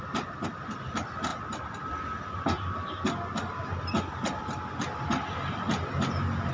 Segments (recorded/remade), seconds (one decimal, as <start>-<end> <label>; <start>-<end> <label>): 0.0-6.5 recorded